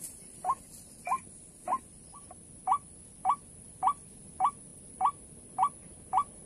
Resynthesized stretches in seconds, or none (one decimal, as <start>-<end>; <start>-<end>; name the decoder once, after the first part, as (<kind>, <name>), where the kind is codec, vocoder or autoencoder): none